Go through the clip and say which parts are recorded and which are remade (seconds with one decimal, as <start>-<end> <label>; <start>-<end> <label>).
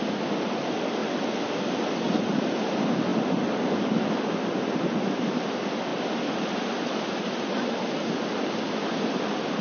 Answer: 0.0-9.6 recorded